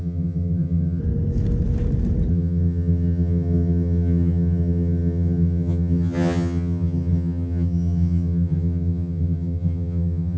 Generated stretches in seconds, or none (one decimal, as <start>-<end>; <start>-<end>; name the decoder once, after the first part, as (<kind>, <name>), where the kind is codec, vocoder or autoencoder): 0.0-1.0 (vocoder, HiFi-GAN); 2.3-10.4